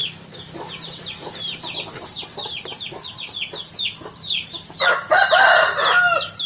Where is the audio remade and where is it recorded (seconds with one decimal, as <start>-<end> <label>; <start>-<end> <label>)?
0.0-6.5 recorded